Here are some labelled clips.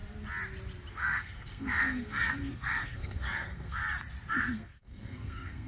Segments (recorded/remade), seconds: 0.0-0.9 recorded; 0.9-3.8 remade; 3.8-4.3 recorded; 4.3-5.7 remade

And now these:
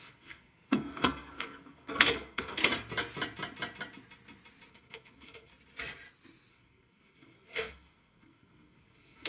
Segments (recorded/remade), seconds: 0.0-2.6 remade; 2.6-4.7 recorded; 4.7-5.5 remade; 5.5-6.5 recorded; 6.5-9.3 remade

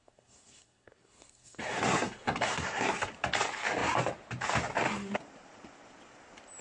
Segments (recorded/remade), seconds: 0.0-3.1 remade; 3.1-6.6 recorded

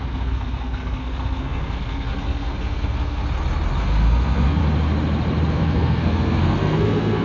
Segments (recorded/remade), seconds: 0.0-3.2 remade; 3.2-3.8 recorded; 3.8-4.6 remade; 4.6-5.5 recorded; 5.5-7.2 remade